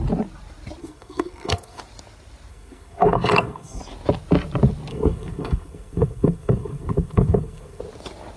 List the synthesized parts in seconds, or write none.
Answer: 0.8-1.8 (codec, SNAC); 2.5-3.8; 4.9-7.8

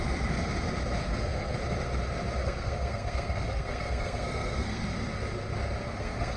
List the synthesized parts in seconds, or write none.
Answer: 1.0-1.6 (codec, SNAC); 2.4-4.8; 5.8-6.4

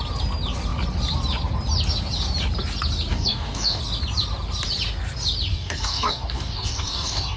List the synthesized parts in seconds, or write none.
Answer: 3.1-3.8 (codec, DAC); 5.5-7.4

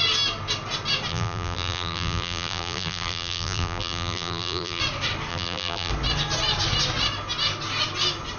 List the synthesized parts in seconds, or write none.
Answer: 1.1-4.8 (vocoder, BigVGAN v2); 5.3-5.9

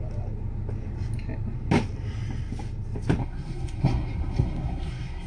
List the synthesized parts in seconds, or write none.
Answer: 3.2-5.3 (codec, SNAC)

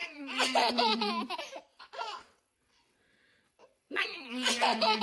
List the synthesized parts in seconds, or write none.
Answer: 0.0-1.1 (vocoder, WaveNeXt); 1.7-5.0

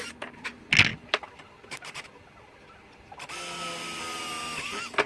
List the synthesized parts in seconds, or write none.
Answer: 0.9-4.0 (vocoder, BigVGAN v2)

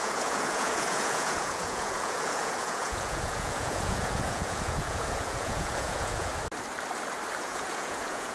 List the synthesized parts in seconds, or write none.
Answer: 0.0-6.3 (vocoder, Vocos); 7.4-8.3